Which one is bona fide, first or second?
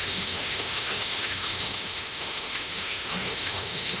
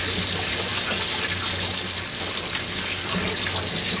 second